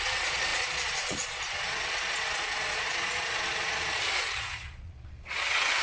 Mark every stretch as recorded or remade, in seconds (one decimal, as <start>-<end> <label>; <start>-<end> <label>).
0.0-5.8 remade